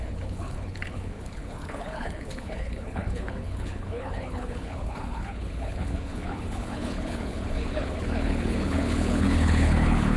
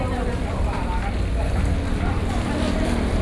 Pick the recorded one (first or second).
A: second